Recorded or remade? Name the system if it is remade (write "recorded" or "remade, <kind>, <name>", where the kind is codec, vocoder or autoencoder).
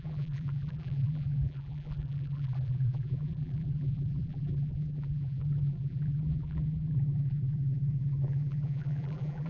remade, vocoder, BigVGAN v2